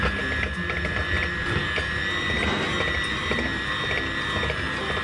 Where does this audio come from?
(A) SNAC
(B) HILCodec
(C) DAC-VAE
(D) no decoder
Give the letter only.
D